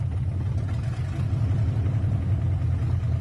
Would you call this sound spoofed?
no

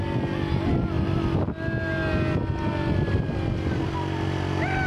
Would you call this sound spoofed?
no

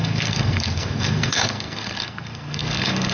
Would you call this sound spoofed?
yes